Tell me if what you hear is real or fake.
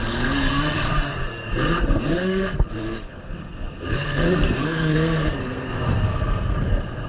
fake